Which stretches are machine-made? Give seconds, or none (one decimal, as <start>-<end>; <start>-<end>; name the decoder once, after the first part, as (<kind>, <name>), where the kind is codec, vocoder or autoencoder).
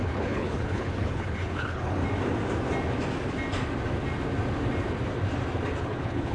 0.0-2.0 (codec, HILCodec); 5.8-6.3